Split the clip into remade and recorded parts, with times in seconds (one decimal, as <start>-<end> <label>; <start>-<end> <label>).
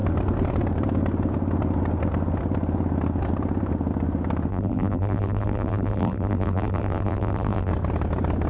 0.0-4.5 recorded; 4.5-7.7 remade; 7.7-8.5 recorded